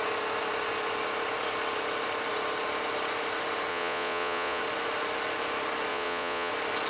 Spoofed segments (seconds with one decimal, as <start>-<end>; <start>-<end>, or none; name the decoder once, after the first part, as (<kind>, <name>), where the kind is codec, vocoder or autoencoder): 3.7-4.6 (vocoder, Vocos); 5.9-6.5